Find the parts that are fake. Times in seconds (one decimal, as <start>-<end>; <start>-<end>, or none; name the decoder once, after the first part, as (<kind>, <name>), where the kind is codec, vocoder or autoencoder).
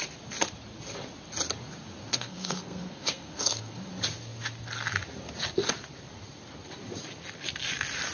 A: 2.1-3.8 (codec, SNAC)